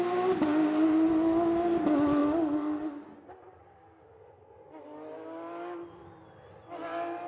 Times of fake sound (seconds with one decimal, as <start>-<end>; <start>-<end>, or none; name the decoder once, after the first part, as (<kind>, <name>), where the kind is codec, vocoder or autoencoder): none